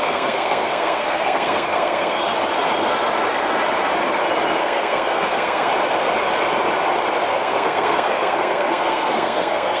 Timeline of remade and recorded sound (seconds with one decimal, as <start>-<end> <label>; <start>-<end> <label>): 0.0-2.2 remade; 2.2-4.6 recorded; 4.6-5.7 remade; 5.7-7.3 recorded; 7.3-9.8 remade